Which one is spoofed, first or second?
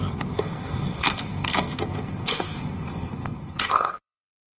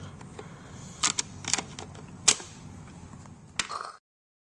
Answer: first